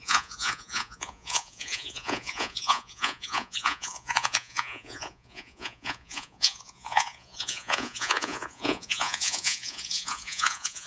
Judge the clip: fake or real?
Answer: fake